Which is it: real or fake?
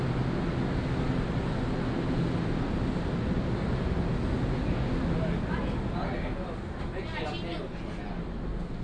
real